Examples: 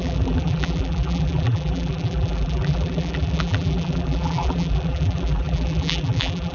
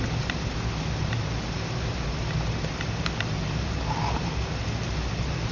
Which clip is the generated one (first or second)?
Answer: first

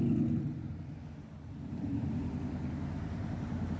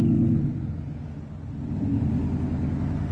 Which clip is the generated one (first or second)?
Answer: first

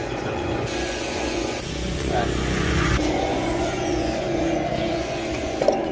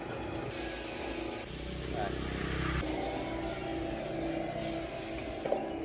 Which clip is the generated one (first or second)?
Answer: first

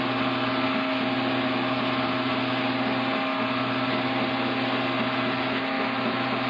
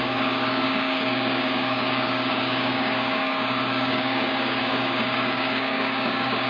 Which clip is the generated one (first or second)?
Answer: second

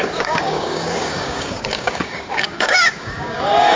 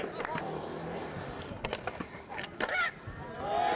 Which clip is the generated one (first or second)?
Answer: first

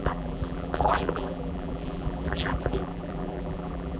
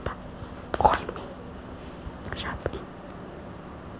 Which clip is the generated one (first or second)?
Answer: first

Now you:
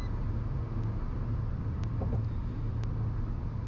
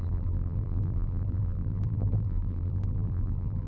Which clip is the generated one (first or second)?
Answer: second